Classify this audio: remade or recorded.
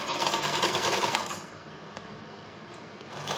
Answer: remade